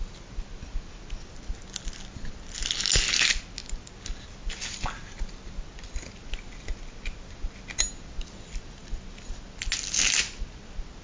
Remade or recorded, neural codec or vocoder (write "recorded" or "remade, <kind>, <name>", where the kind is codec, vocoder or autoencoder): recorded